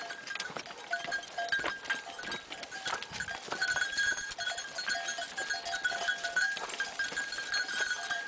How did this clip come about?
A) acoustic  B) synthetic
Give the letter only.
A